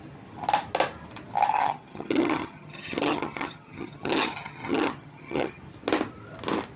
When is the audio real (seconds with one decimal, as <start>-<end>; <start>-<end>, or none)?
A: 0.0-1.5; 5.6-6.8